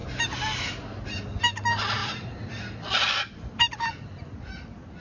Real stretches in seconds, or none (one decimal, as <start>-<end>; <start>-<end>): 0.0-2.0; 3.9-5.0

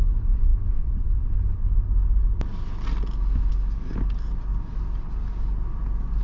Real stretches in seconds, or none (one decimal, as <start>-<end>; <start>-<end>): 0.0-6.2

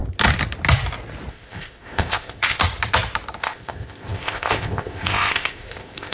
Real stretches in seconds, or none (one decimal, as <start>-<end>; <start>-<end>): 0.0-1.3; 2.6-3.4

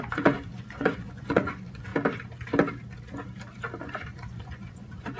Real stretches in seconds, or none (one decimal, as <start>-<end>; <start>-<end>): 1.9-3.8

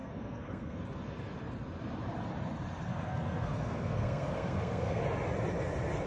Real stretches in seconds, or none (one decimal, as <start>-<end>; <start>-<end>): 0.8-2.9; 5.0-6.1

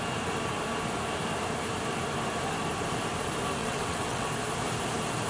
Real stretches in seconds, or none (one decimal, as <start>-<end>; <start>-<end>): 0.0-3.6; 4.3-5.3

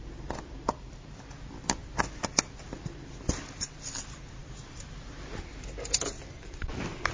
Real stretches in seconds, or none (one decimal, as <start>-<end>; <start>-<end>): 0.0-7.1

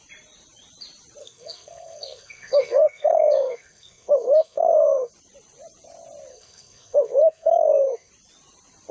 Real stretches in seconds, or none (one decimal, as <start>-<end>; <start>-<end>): 0.0-1.2; 5.1-6.3; 8.1-8.9